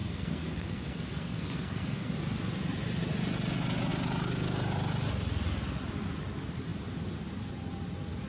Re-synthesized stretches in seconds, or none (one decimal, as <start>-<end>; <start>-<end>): 0.0-2.1